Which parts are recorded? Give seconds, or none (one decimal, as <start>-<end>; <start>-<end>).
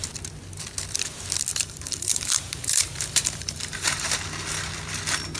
0.0-1.5; 4.1-5.4